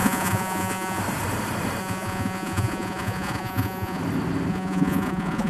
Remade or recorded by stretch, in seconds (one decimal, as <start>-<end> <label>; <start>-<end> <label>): 0.0-1.0 remade; 1.0-1.8 recorded; 1.8-4.0 remade; 4.0-4.5 recorded; 4.5-5.5 remade